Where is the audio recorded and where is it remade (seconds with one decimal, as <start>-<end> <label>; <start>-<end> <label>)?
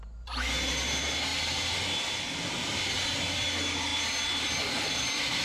0.0-5.4 recorded